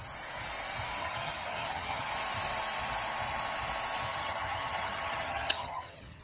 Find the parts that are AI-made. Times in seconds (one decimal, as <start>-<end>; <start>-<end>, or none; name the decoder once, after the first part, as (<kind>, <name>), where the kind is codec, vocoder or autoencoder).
1.0-2.1 (vocoder, HiFi-GAN); 4.1-6.2